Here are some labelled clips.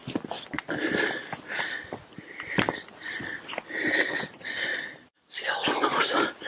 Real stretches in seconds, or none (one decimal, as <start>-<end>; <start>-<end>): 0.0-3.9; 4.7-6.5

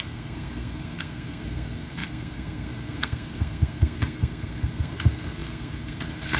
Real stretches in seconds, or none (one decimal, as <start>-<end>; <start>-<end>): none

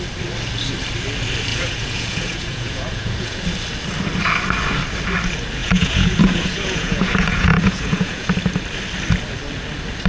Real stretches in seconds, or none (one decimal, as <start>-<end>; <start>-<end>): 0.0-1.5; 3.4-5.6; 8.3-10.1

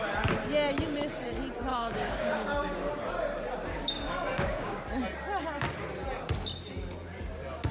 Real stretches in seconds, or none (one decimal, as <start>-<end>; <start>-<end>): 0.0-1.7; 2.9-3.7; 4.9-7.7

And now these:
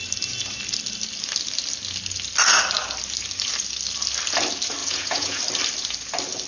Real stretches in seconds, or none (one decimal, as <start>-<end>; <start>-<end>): 0.0-4.8; 5.4-6.5

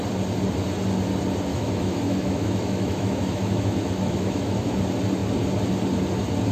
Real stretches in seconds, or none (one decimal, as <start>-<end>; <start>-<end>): 0.0-1.5; 4.8-6.5

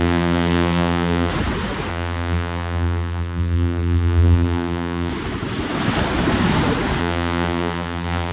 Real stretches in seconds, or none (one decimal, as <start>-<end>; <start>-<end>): 1.3-1.9; 5.1-7.0

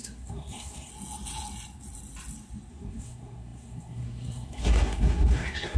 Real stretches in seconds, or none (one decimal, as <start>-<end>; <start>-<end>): 0.9-2.7